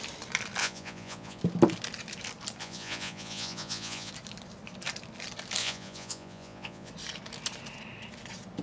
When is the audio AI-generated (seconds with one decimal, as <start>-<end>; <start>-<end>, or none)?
0.6-1.4; 2.6-4.1; 5.6-6.9